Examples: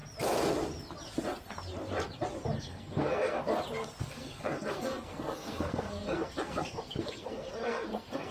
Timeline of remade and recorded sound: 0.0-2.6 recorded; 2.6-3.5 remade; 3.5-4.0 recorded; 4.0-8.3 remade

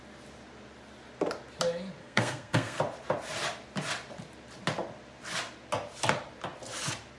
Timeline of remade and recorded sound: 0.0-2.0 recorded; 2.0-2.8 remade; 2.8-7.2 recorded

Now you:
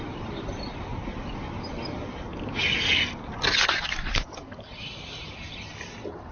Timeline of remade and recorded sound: 0.0-6.3 recorded